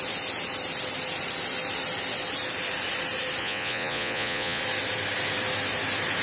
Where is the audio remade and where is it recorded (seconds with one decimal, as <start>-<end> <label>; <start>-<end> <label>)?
0.0-3.4 recorded; 3.4-4.6 remade; 4.6-6.2 recorded